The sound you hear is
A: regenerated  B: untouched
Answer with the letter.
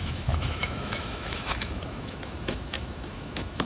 A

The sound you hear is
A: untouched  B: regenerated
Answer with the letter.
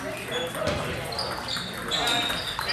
A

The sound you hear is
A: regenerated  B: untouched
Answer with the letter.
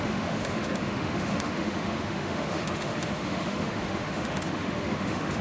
A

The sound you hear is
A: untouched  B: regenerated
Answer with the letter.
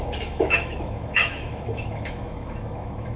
B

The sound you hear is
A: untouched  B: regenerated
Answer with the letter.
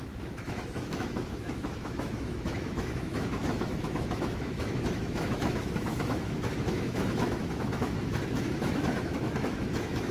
B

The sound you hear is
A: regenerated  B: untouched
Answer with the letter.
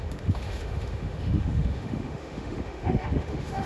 A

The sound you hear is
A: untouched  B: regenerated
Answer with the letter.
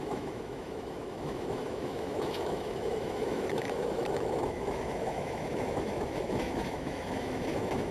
B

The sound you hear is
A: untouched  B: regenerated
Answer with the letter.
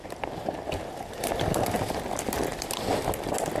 A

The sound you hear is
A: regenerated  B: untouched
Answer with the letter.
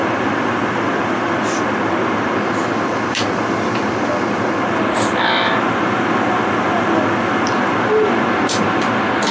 B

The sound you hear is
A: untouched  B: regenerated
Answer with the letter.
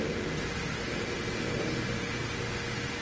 A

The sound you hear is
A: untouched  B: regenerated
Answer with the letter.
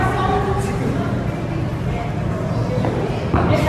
A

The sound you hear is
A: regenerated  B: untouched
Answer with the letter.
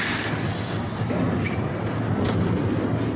B